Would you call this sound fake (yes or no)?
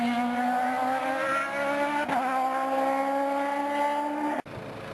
no